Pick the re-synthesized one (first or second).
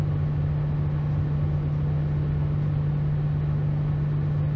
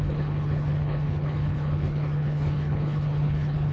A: second